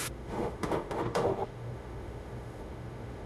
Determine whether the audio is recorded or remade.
remade